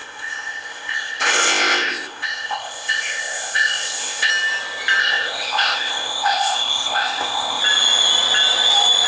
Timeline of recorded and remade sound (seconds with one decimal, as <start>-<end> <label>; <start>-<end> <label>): 0.0-4.3 remade; 4.3-5.0 recorded; 5.0-7.6 remade; 7.6-9.1 recorded